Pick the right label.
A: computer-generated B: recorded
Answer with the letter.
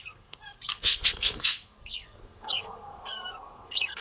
A